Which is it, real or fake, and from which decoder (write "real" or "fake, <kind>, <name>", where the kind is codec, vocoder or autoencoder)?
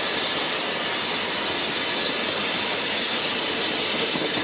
real